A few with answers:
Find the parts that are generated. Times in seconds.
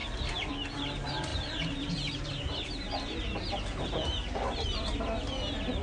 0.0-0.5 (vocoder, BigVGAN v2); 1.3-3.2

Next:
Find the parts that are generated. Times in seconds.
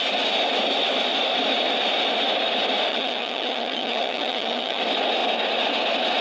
2.9-4.8 (vocoder, HiFi-GAN)